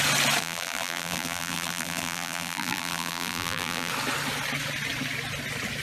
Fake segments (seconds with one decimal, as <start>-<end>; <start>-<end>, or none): 0.4-3.9